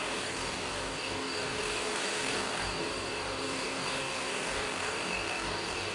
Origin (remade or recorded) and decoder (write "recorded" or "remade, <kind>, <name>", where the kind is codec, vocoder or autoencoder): remade, codec, DAC